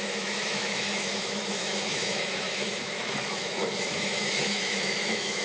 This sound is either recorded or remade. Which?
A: remade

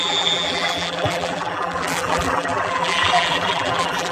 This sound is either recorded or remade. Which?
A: remade